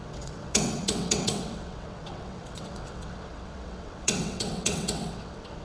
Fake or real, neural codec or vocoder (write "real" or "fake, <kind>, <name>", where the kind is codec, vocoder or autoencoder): fake, vocoder, WaveNeXt